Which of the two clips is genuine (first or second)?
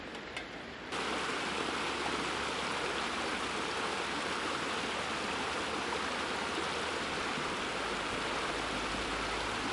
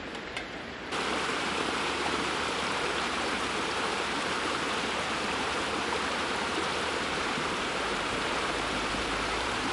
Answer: first